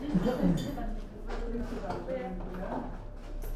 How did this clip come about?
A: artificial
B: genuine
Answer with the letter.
B